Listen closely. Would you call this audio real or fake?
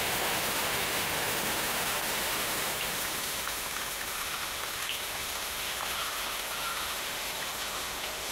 fake